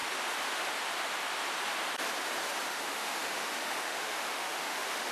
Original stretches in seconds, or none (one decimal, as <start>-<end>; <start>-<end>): 0.0-2.7